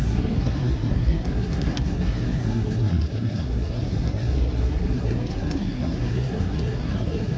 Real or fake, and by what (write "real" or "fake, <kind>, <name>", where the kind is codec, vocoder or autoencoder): fake, codec, SNAC